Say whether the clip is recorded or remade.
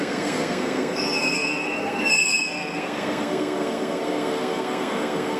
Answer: remade